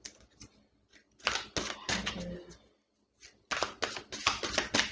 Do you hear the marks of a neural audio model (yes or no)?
no